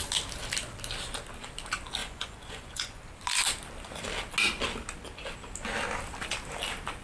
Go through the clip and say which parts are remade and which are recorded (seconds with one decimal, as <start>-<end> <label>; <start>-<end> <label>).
0.0-2.0 recorded; 2.0-3.0 remade; 3.0-7.0 recorded